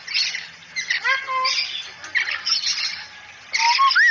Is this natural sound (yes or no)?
yes